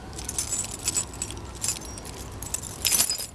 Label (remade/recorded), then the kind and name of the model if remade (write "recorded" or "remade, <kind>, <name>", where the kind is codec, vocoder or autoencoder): recorded